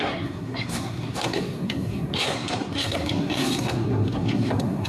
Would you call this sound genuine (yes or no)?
no